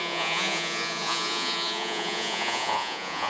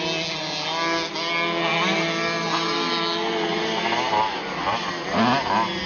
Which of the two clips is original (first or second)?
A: second